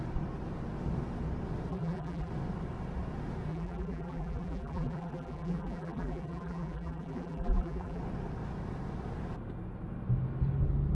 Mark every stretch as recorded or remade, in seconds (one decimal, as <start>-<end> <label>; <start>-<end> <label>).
0.0-1.7 recorded; 1.7-2.3 remade; 2.3-3.5 recorded; 3.5-8.0 remade; 8.0-10.9 recorded